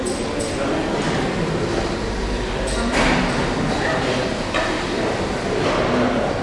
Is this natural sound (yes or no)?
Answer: yes